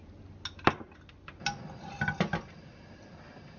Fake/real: real